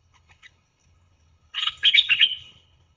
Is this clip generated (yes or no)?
yes